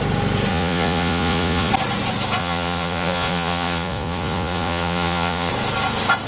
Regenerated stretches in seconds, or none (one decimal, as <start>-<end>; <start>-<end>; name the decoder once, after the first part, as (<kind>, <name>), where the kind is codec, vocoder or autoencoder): 0.5-1.7 (vocoder, Vocos); 2.4-5.5